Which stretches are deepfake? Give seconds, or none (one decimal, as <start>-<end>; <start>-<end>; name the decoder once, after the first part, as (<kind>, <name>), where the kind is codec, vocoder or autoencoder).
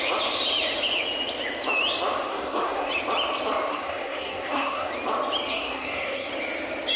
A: 2.3-2.9 (codec, SNAC); 3.7-4.9; 5.5-6.3